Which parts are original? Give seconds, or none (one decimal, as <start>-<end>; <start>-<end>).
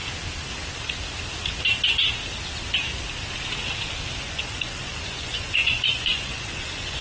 0.0-4.2